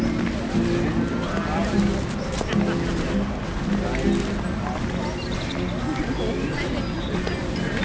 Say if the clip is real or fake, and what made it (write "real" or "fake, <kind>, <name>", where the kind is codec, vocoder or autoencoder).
real